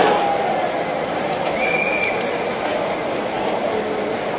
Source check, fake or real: real